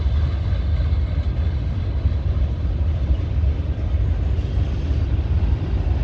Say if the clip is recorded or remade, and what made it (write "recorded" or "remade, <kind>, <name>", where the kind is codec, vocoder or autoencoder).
recorded